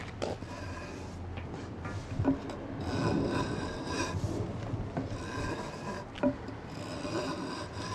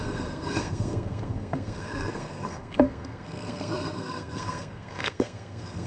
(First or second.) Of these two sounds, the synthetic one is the second